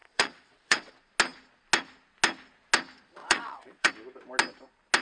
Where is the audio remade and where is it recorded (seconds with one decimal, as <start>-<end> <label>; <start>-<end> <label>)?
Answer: 0.0-0.9 remade; 0.9-3.2 recorded; 3.2-3.9 remade; 3.9-5.0 recorded